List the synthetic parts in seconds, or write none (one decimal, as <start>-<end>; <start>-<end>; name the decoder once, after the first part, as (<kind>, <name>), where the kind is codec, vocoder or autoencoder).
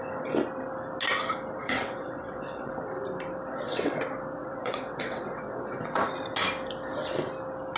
1.6-2.7 (vocoder, WaveNeXt); 3.5-4.0; 4.4-6.0